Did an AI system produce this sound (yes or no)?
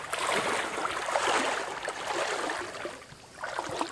no